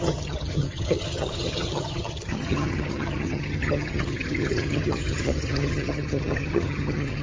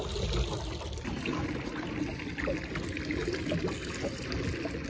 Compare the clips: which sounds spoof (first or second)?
first